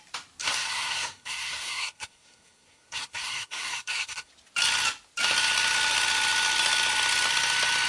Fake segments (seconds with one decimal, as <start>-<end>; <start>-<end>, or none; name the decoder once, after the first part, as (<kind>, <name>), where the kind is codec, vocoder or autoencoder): 0.4-4.3 (codec, SNAC)